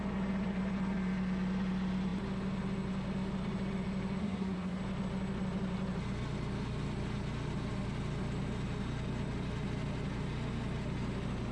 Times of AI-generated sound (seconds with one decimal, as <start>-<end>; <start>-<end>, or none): 4.2-4.8